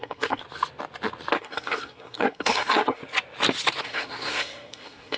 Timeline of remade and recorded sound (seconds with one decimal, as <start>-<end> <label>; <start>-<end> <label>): 0.0-0.4 remade; 0.4-1.4 recorded; 1.4-3.0 remade; 3.0-3.8 recorded; 3.8-5.2 remade